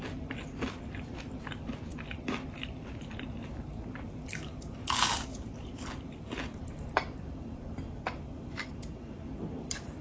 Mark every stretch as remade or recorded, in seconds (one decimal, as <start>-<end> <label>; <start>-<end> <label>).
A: 0.0-10.0 recorded